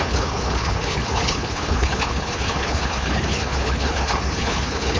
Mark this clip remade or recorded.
remade